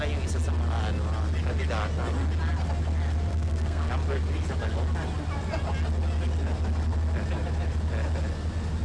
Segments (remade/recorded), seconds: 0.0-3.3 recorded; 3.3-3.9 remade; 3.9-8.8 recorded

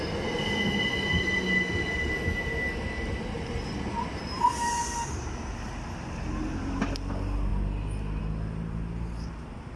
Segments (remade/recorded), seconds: 0.0-9.8 recorded

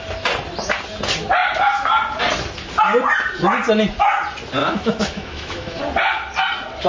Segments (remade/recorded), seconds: 0.0-4.6 recorded; 4.6-5.8 remade; 5.8-6.9 recorded